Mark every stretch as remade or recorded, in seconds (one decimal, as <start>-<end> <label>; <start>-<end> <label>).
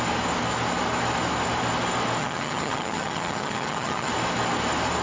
0.0-2.2 recorded; 2.2-4.1 remade; 4.1-5.0 recorded